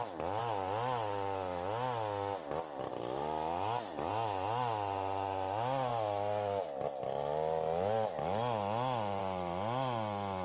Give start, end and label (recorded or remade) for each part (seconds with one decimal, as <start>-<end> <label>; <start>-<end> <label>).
0.0-10.4 recorded